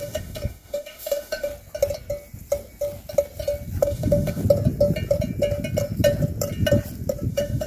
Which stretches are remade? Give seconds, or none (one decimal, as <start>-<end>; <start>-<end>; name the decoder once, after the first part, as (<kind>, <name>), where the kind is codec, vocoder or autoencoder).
0.0-1.5 (autoencoder, DAC-VAE); 3.8-4.4; 7.3-7.7